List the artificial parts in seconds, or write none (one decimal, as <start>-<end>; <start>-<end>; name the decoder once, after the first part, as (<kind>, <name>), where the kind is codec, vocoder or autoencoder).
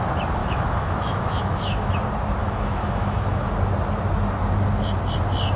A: 0.4-1.9 (autoencoder, DAC-VAE); 2.4-3.5